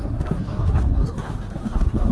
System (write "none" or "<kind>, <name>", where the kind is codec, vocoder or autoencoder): codec, SNAC